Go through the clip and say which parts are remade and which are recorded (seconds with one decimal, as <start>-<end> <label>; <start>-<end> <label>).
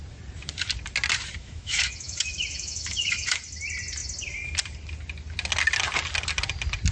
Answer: 0.0-1.4 recorded; 1.4-3.4 remade; 3.4-6.9 recorded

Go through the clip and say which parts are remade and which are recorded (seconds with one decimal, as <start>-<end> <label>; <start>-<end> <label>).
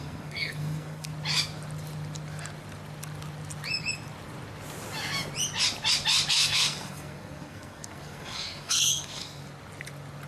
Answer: 0.0-1.1 remade; 1.1-6.3 recorded; 6.3-9.4 remade; 9.4-10.3 recorded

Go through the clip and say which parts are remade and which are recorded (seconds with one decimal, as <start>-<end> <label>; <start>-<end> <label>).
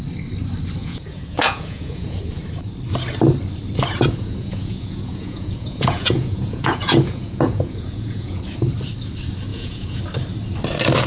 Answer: 0.0-0.8 recorded; 0.8-2.2 remade; 2.2-4.1 recorded; 4.1-8.4 remade; 8.4-9.5 recorded; 9.5-10.0 remade; 10.0-11.1 recorded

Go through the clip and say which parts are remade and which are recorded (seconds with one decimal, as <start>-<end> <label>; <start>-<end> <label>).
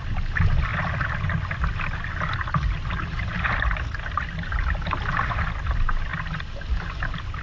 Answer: 0.0-7.4 recorded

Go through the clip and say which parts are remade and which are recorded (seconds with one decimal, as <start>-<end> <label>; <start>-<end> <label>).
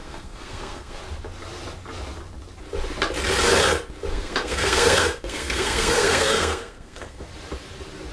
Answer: 0.0-1.0 remade; 1.0-4.1 recorded; 4.1-7.2 remade; 7.2-8.1 recorded